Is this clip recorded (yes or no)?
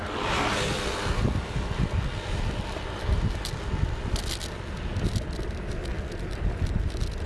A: yes